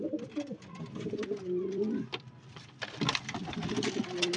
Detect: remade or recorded remade